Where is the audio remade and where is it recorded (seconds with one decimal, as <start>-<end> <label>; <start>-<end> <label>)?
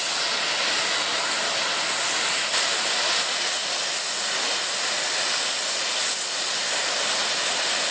0.0-7.9 recorded